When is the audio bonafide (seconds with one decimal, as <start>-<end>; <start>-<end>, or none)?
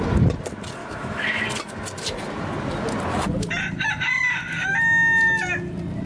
0.0-0.8; 1.4-6.1